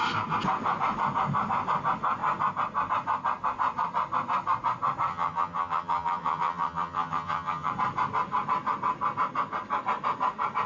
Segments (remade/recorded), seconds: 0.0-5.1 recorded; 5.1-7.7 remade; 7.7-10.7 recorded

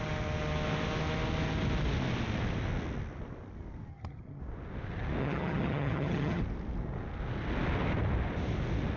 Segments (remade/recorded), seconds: 0.0-3.9 recorded; 3.9-4.4 remade; 4.4-5.2 recorded; 5.2-6.4 remade; 6.4-9.0 recorded

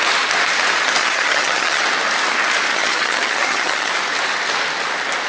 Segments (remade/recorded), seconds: 0.0-1.0 recorded; 1.0-1.8 remade; 1.8-2.7 recorded; 2.7-3.9 remade; 3.9-5.3 recorded

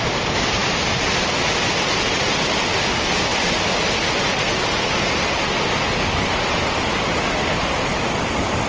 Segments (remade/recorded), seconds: 0.0-8.7 recorded